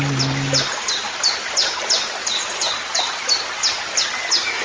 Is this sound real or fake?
real